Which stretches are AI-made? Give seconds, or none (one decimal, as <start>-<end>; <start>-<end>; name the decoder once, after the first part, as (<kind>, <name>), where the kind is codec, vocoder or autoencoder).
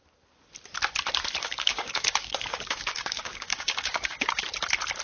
1.4-4.4 (codec, DAC)